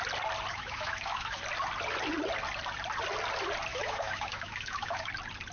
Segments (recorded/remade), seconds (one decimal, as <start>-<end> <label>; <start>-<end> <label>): 0.0-0.5 recorded; 0.5-1.4 remade; 1.4-3.7 recorded; 3.7-5.1 remade; 5.1-5.5 recorded